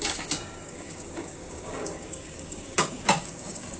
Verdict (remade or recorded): remade